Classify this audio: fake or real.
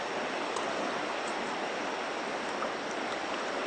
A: real